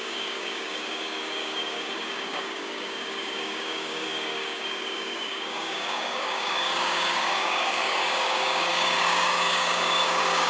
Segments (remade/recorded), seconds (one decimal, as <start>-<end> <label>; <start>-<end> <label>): 0.0-10.5 remade